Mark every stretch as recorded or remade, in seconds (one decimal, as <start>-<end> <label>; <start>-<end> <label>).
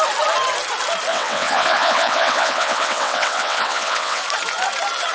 0.0-1.1 recorded; 1.1-4.2 remade; 4.2-5.1 recorded